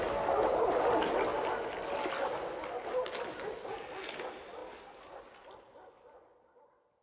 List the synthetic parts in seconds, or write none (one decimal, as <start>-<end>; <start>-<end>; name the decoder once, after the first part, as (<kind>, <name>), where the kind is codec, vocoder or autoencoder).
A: none

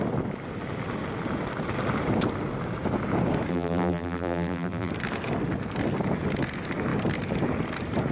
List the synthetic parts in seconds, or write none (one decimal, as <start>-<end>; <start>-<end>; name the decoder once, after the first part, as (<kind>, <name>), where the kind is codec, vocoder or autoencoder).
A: 3.5-4.9 (vocoder, BigVGAN v2)